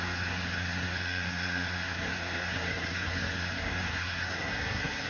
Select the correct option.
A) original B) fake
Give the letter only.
B